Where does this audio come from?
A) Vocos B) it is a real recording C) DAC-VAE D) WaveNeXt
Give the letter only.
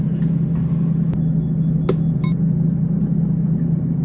B